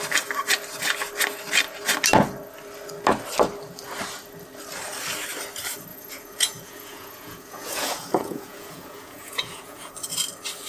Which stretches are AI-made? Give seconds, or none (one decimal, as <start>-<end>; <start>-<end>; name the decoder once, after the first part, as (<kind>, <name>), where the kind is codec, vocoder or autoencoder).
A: 5.9-9.9 (vocoder, Vocos)